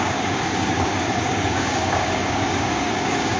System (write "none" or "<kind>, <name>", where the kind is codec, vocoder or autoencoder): codec, DAC